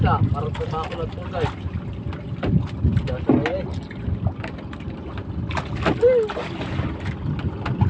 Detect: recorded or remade recorded